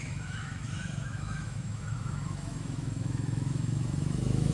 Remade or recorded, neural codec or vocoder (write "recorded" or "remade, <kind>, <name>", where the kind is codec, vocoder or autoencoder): remade, autoencoder, DAC-VAE